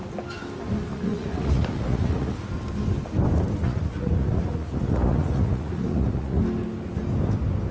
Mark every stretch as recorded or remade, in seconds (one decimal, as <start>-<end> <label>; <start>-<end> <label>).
0.0-0.9 recorded; 0.9-2.4 remade; 2.4-3.6 recorded; 3.6-6.4 remade; 6.4-7.7 recorded